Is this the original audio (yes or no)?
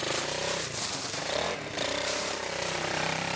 no